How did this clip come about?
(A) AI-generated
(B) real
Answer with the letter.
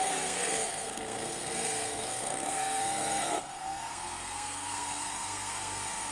A